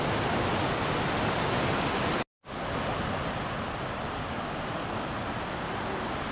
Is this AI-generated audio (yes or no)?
no